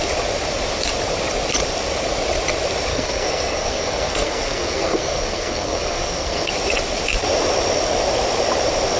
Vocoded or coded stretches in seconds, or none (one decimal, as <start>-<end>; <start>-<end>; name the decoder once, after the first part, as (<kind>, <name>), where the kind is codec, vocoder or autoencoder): 2.9-6.5 (codec, SNAC)